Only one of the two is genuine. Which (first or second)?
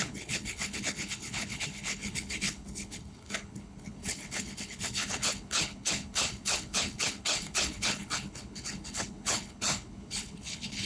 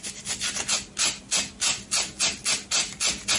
second